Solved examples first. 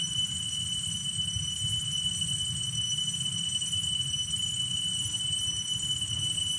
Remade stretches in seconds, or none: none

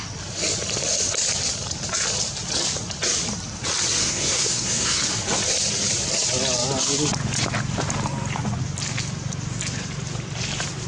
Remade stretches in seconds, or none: 4.0-5.0 (codec, SNAC)

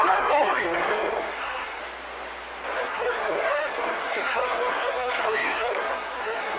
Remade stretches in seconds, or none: 0.0-1.8 (codec, SNAC); 2.8-6.6

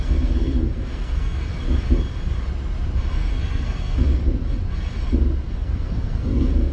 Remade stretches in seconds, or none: 0.0-1.5 (codec, SNAC); 3.3-4.2; 5.5-6.7

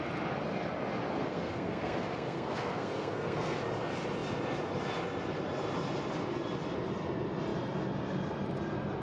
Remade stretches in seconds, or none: 1.2-3.6 (codec, SNAC)

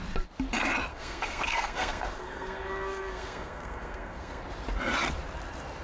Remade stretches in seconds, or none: 0.9-4.4 (codec, SNAC)